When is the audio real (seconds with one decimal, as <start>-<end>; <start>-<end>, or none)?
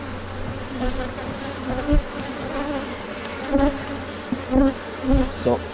0.0-5.7